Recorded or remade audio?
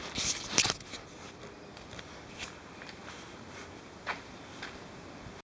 recorded